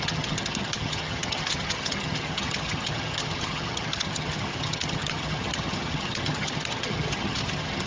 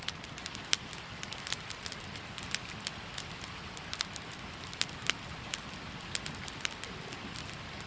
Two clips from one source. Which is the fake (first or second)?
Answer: first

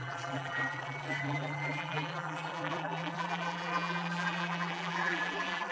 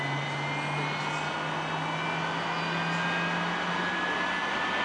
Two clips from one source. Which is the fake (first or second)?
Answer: first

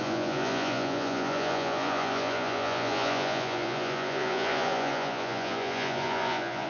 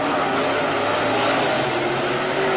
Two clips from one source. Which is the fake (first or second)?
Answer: first